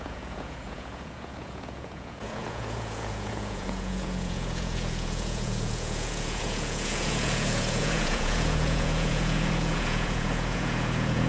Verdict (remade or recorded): remade